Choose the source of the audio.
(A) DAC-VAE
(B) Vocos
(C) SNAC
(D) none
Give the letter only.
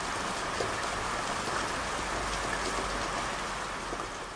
D